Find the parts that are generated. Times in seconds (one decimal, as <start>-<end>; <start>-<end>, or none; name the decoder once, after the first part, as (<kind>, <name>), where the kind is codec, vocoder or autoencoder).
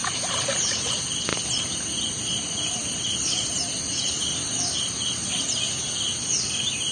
0.0-0.8 (vocoder, BigVGAN v2); 1.3-5.4